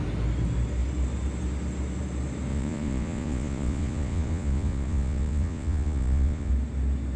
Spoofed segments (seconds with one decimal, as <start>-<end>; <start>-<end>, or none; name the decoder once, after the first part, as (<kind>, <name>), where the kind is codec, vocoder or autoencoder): 2.5-6.5 (vocoder, Vocos)